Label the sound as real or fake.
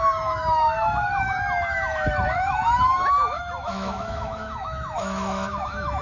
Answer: fake